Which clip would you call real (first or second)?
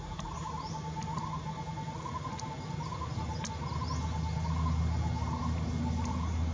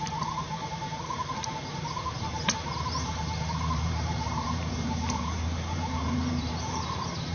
first